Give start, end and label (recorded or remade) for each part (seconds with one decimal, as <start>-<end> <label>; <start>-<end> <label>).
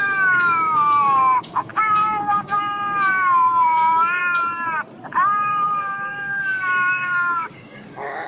0.0-4.2 remade; 4.2-5.8 recorded; 5.8-8.3 remade